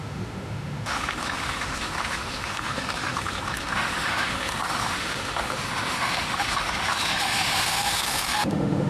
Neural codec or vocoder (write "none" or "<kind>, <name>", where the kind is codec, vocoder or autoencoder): autoencoder, DAC-VAE